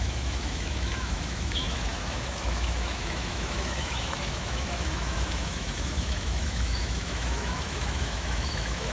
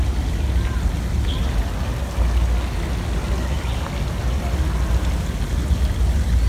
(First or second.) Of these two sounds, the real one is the second